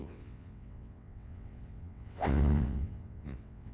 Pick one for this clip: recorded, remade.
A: remade